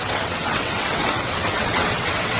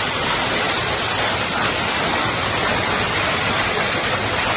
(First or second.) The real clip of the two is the second